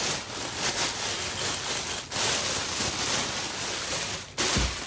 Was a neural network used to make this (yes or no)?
no